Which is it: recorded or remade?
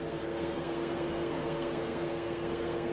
remade